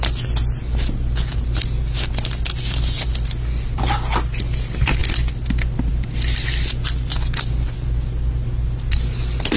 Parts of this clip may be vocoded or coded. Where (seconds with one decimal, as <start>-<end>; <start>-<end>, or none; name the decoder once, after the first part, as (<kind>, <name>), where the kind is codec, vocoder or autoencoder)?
none